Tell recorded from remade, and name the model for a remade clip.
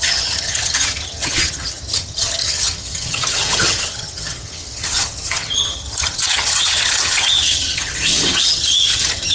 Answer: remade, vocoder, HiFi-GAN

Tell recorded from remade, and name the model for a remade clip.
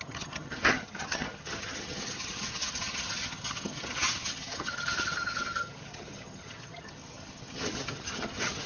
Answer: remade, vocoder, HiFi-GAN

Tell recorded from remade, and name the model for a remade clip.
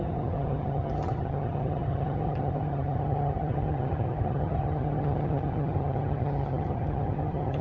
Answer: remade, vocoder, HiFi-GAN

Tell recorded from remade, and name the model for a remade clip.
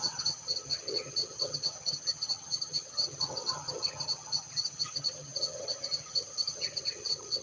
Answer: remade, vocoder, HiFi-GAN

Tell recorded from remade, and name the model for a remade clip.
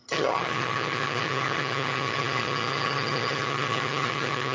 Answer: remade, vocoder, HiFi-GAN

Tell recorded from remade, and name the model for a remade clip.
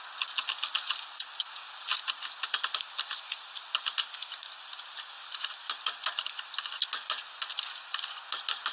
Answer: recorded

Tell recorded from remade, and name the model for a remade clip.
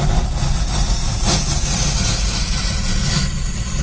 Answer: recorded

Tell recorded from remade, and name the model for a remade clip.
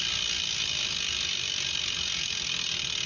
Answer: recorded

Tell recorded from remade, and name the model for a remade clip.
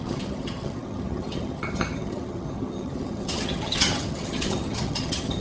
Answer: remade, vocoder, HiFi-GAN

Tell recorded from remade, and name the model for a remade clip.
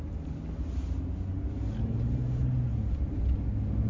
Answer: recorded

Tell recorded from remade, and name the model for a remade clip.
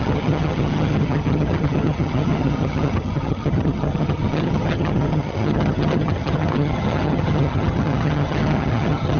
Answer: remade, vocoder, HiFi-GAN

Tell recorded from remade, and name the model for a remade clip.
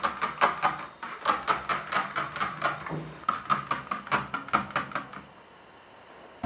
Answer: recorded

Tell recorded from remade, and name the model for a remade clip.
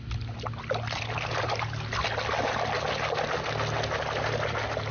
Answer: recorded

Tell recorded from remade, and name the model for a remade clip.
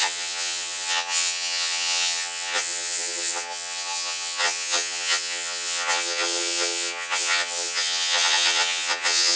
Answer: remade, vocoder, HiFi-GAN